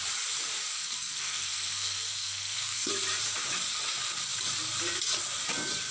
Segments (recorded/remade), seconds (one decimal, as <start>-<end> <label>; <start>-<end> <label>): 0.0-0.7 recorded; 0.7-2.9 remade; 2.9-5.9 recorded